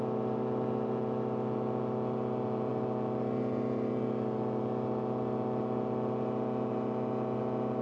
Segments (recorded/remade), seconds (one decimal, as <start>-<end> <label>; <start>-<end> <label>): 0.0-7.8 recorded